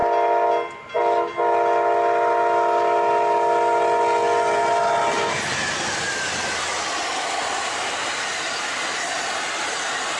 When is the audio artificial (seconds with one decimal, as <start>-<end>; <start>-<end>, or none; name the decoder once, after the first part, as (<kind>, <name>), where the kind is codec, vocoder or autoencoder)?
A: none